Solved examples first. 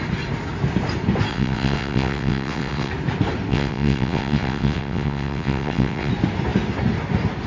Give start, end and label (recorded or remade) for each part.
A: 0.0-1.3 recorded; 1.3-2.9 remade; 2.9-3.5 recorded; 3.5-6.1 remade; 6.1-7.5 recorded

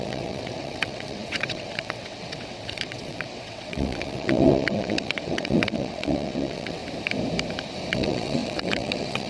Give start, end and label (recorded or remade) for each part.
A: 0.0-6.8 remade; 6.8-7.9 recorded; 7.9-9.3 remade